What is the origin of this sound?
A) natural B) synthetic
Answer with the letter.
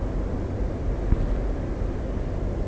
A